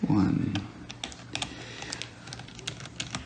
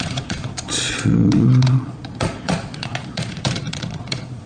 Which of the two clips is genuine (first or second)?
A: first